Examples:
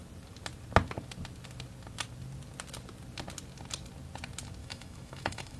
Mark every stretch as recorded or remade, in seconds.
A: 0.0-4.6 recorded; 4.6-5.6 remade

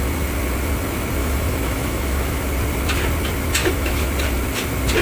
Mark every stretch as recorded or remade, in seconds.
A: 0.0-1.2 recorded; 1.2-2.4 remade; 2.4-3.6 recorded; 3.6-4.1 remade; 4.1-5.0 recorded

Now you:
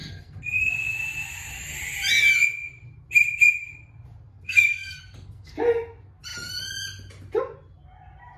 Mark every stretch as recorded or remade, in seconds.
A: 0.0-0.7 remade; 0.7-4.3 recorded; 4.3-5.6 remade; 5.6-8.4 recorded